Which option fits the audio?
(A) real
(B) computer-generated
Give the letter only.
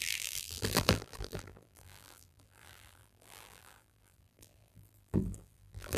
B